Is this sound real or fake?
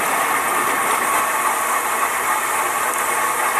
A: real